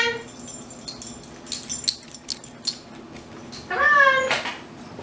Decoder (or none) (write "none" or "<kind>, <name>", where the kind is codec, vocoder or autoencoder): none